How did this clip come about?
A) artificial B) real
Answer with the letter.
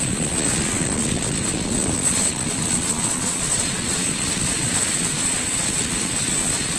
A